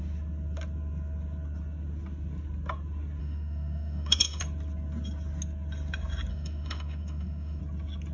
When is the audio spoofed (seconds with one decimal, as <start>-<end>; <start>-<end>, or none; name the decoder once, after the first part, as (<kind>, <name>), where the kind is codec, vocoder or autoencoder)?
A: 3.2-4.4 (autoencoder, DAC-VAE); 6.3-7.6